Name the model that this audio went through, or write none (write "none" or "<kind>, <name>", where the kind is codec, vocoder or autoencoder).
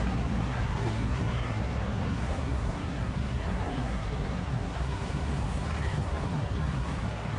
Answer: codec, SNAC